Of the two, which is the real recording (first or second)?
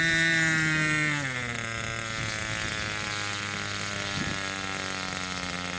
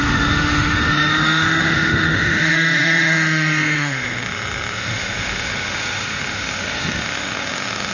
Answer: first